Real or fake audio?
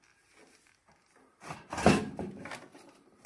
real